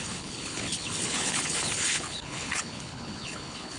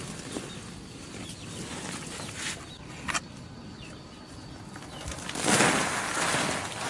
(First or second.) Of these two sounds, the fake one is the first